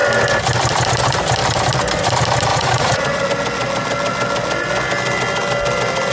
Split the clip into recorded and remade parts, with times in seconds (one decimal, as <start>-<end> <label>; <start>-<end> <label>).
0.0-2.5 recorded; 2.5-3.2 remade; 3.2-6.1 recorded